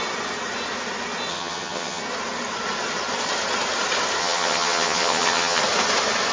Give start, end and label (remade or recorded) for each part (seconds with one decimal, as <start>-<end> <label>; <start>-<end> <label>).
0.0-1.3 recorded; 1.3-2.0 remade; 2.0-4.2 recorded; 4.2-5.6 remade; 5.6-6.3 recorded